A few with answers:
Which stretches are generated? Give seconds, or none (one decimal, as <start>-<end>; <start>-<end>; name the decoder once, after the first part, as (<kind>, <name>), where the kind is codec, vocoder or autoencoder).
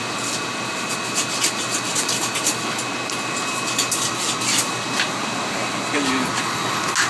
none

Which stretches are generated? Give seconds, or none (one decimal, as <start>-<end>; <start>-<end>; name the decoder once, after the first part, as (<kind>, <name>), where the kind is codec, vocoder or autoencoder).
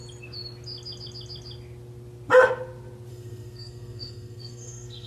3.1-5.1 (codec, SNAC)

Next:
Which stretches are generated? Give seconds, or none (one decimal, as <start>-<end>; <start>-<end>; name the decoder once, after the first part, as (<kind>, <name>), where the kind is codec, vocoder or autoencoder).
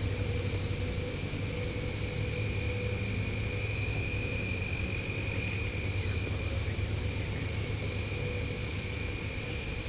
8.6-9.1 (autoencoder, DAC-VAE)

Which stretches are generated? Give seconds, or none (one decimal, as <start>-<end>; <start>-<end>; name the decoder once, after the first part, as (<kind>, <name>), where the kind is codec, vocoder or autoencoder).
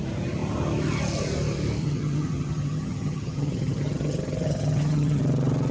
1.8-5.2 (vocoder, HiFi-GAN)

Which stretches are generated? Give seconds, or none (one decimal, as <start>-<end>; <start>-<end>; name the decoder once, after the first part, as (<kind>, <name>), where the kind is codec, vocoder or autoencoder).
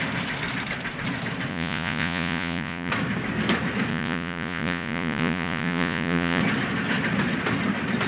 1.5-2.9 (vocoder, Vocos); 3.9-6.4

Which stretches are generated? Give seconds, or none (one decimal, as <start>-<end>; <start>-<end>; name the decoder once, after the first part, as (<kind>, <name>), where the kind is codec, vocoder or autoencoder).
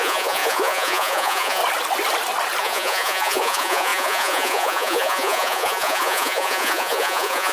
0.0-1.6 (vocoder, Vocos); 2.6-7.5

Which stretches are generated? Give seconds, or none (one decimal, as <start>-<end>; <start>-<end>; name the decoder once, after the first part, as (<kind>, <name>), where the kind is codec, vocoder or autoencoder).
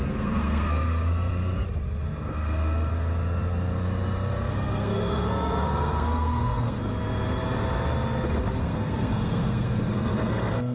0.0-1.3 (codec, SNAC); 4.5-6.8; 8.6-10.7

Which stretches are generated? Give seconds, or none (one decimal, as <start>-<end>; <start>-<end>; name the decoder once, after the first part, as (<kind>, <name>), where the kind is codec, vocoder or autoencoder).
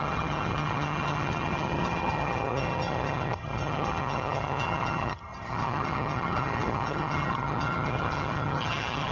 0.0-9.1 (vocoder, HiFi-GAN)